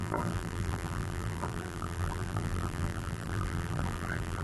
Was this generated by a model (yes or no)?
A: yes